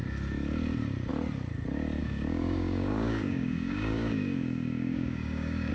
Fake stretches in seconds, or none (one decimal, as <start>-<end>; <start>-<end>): 2.0-5.7

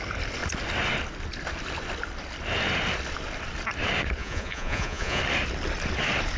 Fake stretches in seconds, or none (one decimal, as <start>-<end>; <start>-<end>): 4.2-5.2

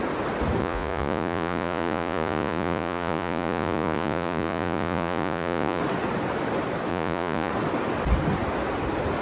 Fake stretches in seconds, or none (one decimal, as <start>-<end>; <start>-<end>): 0.6-5.8; 6.9-7.5

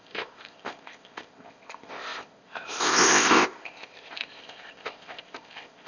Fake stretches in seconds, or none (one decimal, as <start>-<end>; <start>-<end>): 0.0-5.9

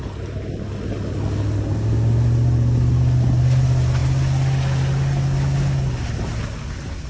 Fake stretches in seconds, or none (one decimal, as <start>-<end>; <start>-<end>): none

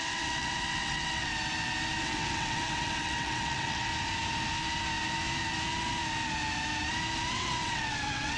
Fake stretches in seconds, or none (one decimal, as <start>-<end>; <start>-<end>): 0.0-1.3; 2.0-3.9; 7.3-8.4

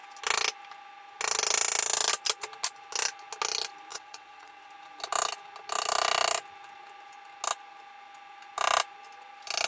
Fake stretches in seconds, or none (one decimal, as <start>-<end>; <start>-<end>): 3.9-4.7

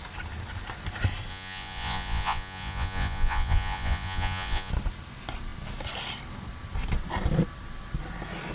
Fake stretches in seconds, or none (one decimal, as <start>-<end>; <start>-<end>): 1.3-4.7